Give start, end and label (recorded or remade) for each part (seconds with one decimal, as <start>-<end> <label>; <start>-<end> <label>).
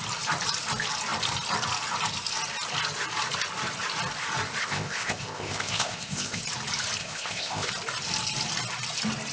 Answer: 0.0-4.6 recorded; 4.6-6.4 remade; 6.4-7.0 recorded; 7.0-7.7 remade; 7.7-9.3 recorded